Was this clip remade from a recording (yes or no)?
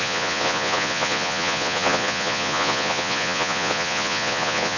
yes